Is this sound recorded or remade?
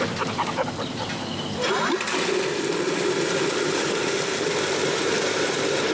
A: remade